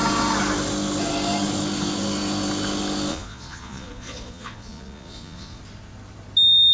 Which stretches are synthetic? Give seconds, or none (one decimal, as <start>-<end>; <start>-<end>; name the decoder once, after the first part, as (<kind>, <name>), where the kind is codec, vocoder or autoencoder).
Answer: 3.1-5.6 (vocoder, Vocos)